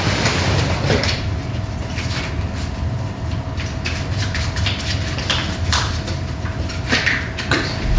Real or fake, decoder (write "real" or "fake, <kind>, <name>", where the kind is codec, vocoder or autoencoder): real